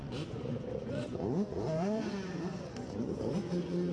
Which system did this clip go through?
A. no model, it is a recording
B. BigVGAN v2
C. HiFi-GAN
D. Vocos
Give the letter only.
D